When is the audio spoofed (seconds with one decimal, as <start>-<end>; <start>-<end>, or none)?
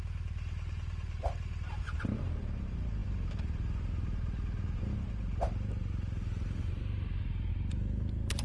0.0-8.4